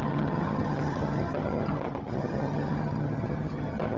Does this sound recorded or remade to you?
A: remade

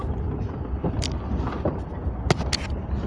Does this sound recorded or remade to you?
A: recorded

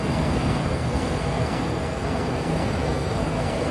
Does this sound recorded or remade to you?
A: remade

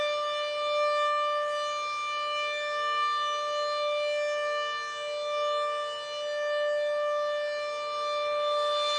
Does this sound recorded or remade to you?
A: recorded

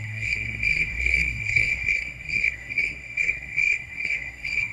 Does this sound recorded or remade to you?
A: remade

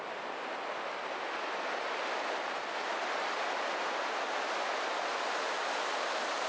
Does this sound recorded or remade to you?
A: recorded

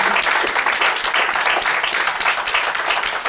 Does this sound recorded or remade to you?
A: recorded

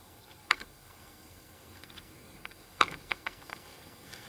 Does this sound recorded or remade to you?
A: remade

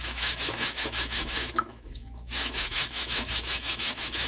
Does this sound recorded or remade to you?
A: remade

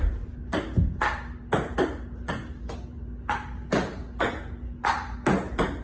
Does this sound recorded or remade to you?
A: recorded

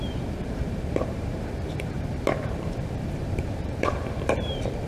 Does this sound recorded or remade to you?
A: remade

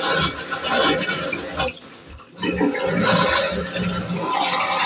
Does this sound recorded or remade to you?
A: recorded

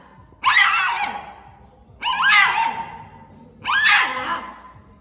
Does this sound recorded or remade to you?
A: recorded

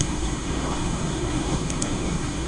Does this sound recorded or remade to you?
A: remade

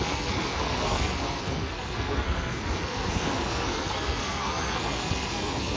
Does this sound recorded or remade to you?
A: remade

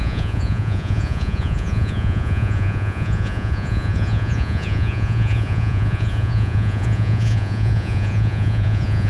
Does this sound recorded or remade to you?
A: remade